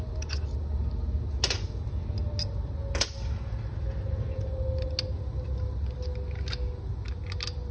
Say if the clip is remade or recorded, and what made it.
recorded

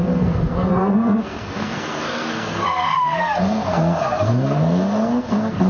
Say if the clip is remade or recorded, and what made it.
remade, codec, SNAC